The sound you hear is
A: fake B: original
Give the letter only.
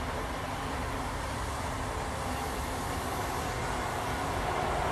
B